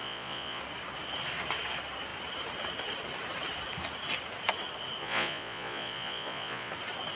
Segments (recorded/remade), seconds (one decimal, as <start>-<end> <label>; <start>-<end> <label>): 0.0-0.6 remade; 0.6-5.0 recorded; 5.0-6.7 remade; 6.7-7.2 recorded